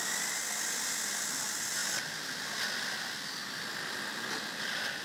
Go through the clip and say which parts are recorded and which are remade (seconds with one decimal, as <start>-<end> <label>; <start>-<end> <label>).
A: 0.0-5.0 recorded

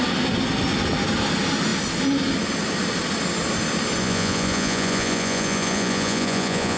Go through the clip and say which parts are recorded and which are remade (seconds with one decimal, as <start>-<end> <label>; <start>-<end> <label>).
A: 0.0-4.0 recorded; 4.0-6.8 remade

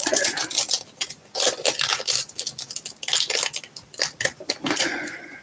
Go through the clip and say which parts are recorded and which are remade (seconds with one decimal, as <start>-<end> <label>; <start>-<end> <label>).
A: 0.0-0.4 remade; 0.4-1.0 recorded; 1.0-1.6 remade; 1.6-4.8 recorded; 4.8-5.4 remade